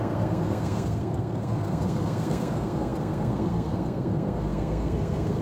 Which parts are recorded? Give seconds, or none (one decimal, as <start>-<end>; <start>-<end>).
none